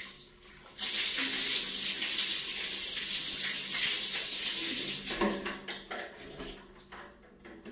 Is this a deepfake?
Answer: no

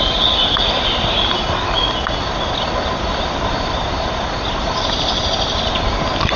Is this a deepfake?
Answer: no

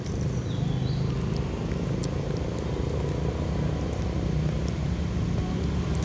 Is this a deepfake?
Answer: no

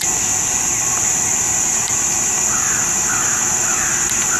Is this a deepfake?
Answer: no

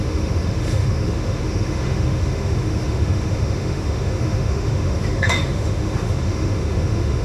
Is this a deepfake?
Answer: yes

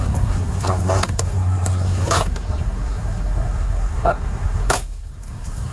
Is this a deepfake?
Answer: yes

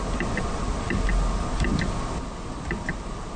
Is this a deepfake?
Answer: no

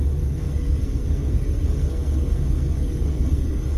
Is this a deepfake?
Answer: yes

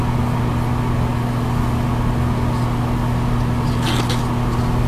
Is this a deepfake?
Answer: no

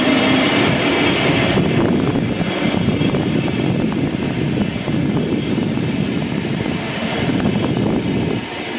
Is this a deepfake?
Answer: no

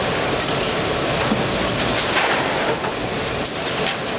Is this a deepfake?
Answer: no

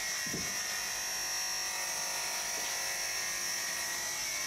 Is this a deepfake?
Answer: no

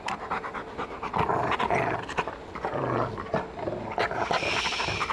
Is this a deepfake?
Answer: no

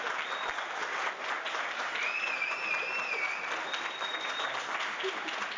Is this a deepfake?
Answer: no